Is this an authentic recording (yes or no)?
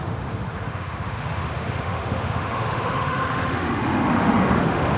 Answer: no